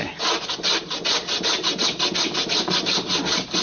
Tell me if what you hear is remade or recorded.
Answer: recorded